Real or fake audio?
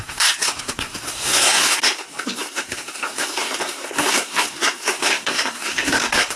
fake